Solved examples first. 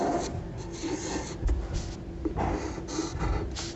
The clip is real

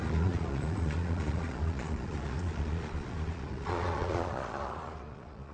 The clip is fake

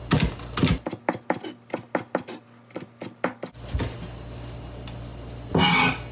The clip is real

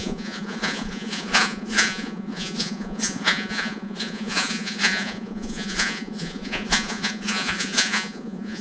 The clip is fake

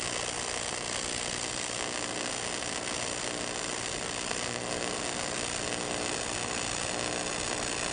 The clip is real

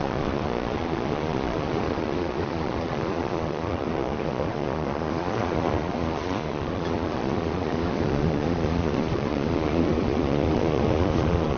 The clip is fake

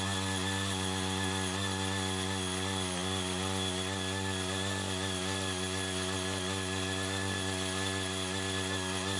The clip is real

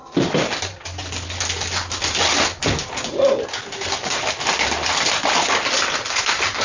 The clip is real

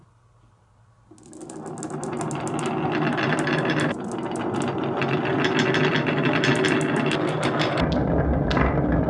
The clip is real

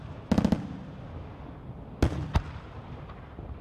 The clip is real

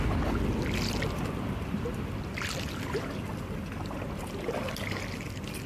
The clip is real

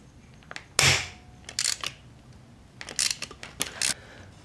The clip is real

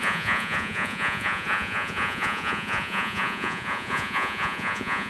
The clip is fake